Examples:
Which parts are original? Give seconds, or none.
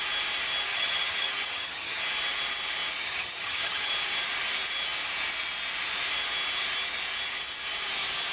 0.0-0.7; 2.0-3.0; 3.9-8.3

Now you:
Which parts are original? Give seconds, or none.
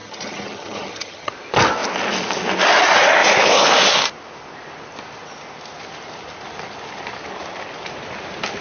1.3-8.6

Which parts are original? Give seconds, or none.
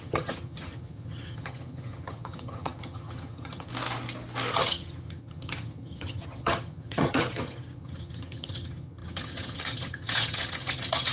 3.7-4.5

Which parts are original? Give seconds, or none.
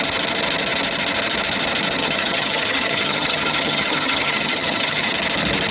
0.0-2.0; 5.1-5.7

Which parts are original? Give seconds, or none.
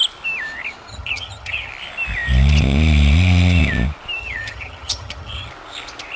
0.0-0.9; 1.7-4.2; 5.5-6.2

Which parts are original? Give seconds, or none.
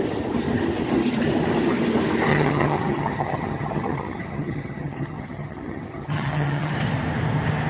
0.0-2.3; 6.7-7.7